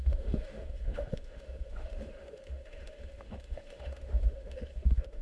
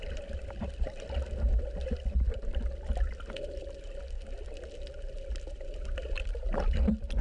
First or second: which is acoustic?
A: second